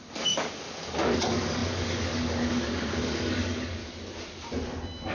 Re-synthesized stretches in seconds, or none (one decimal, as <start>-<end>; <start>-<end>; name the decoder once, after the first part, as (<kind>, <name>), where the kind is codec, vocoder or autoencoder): 0.0-3.8 (codec, DAC)